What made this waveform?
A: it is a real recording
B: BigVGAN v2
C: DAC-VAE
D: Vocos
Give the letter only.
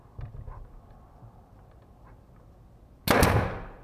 A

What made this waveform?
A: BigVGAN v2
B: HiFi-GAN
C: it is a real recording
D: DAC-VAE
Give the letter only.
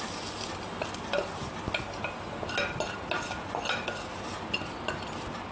C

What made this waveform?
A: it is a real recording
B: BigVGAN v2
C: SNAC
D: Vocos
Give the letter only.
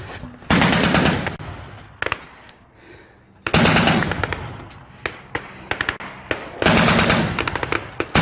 A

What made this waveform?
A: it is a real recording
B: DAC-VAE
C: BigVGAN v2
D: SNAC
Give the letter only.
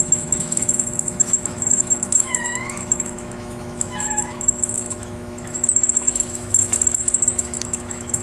B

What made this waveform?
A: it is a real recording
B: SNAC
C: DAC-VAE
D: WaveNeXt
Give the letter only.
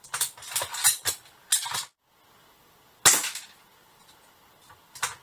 A